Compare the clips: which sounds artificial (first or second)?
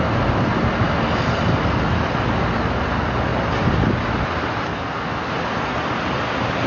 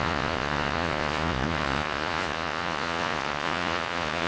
second